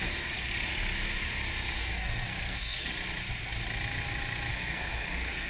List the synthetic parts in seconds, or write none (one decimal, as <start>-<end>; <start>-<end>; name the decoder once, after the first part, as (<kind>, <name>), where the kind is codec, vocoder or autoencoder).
1.8-2.9 (codec, SNAC); 4.5-5.5